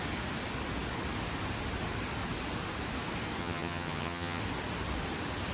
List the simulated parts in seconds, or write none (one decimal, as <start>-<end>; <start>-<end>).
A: 3.4-4.4